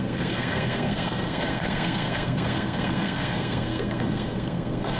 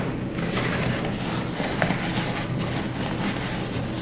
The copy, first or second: first